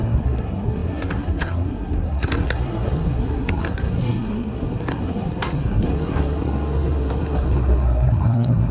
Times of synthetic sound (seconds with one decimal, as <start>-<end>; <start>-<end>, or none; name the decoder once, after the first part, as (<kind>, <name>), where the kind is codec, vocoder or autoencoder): 0.0-8.7 (codec, SNAC)